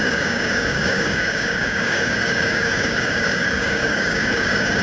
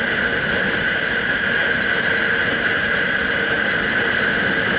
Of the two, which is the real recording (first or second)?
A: second